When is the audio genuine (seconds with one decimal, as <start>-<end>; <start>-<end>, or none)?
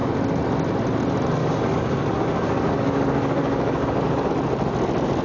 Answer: 0.0-1.4; 4.3-5.2